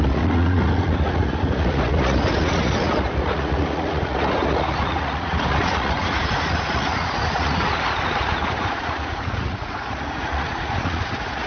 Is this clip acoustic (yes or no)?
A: no